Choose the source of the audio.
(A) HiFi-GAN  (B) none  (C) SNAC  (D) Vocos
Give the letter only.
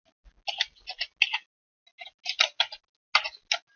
B